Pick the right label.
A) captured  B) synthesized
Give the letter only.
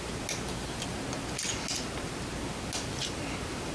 A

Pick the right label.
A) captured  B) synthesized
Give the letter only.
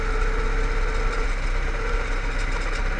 A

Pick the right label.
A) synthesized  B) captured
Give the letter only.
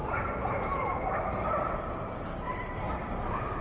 B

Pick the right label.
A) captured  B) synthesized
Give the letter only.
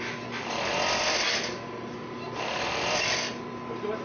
A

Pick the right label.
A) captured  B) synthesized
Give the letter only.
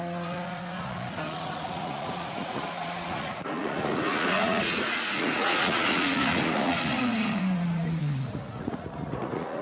B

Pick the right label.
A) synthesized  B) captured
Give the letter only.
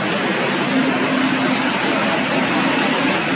B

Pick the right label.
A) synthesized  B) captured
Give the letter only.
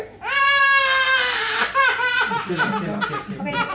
B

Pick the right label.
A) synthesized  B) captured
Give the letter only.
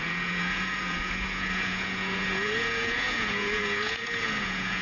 A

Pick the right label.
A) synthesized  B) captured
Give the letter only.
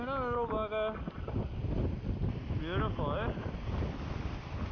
B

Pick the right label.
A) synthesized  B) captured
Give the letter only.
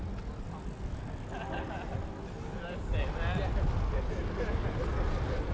B